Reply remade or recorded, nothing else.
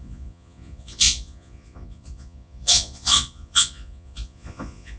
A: remade